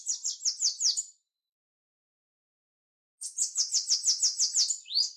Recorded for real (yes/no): yes